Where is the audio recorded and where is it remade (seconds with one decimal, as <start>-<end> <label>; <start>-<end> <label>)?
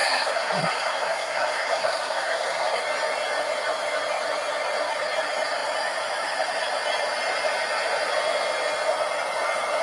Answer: 0.0-2.8 remade; 2.8-9.8 recorded